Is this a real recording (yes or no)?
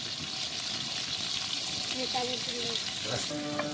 yes